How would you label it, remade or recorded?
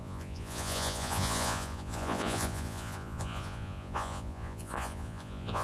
remade